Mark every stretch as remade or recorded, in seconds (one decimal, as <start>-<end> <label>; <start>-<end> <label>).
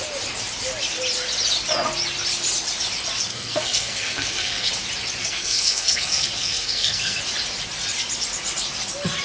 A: 0.0-3.3 recorded; 3.3-4.7 remade; 4.7-5.2 recorded; 5.2-7.2 remade; 7.2-9.2 recorded